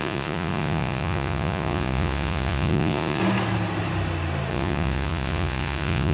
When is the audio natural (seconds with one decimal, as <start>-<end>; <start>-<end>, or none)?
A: 3.2-4.5